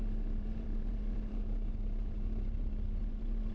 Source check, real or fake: fake